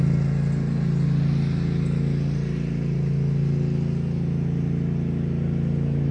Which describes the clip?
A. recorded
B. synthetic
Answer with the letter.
A